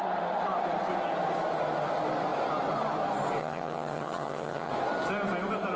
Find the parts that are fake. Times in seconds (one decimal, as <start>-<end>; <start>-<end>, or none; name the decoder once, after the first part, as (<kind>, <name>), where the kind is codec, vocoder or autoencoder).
3.4-4.7 (vocoder, HiFi-GAN)